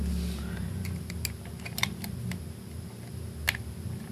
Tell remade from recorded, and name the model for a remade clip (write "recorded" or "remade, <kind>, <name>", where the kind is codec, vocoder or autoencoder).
recorded